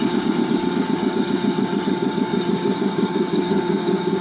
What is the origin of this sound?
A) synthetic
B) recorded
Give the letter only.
A